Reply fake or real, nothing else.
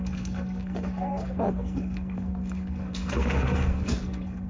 fake